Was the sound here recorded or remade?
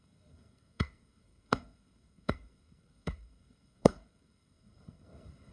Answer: remade